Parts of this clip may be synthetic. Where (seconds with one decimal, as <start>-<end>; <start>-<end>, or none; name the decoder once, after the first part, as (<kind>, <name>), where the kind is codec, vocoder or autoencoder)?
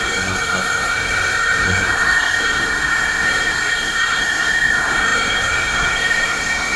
0.0-6.8 (codec, SNAC)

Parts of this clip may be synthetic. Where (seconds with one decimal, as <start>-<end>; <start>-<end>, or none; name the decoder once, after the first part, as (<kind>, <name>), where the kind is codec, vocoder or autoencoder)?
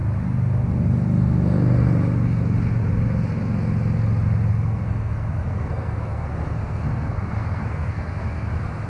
4.5-8.5 (codec, SNAC)